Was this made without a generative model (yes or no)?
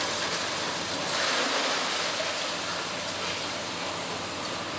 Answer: yes